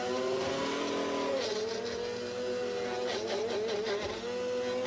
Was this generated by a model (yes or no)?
no